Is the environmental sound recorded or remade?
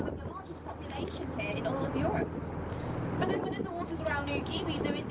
recorded